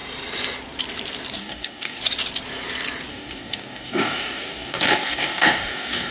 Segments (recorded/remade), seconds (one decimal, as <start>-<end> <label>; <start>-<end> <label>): 0.0-1.4 recorded; 1.4-2.0 remade; 2.0-3.1 recorded; 3.1-6.1 remade